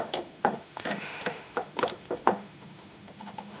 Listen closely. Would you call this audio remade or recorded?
remade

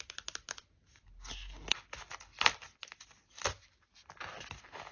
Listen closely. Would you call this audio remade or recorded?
recorded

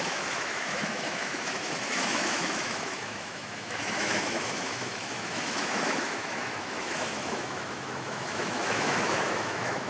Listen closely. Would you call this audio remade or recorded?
remade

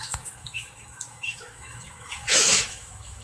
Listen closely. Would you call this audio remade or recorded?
remade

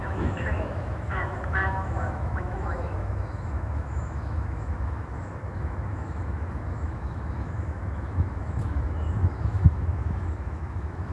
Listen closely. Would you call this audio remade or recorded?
remade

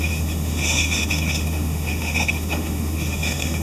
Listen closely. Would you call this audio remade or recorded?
remade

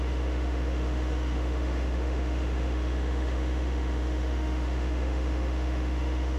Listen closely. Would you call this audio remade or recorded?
remade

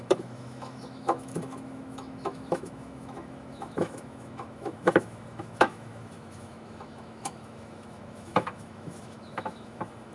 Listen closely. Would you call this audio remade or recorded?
remade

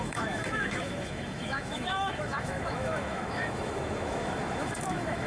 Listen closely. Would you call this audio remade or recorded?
remade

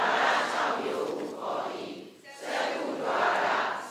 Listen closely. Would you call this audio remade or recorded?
recorded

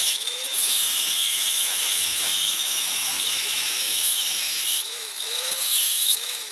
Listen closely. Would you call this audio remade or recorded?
remade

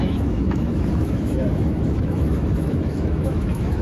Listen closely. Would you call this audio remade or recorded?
remade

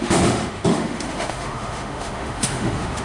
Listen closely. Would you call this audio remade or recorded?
remade